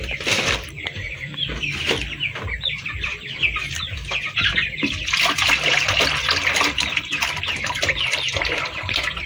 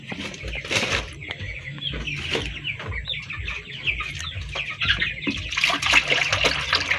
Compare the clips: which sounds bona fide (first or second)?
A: second